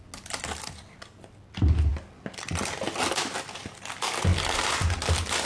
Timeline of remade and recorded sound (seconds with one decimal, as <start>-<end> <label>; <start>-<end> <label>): 0.0-5.5 recorded